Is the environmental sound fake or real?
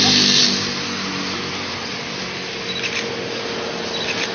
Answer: real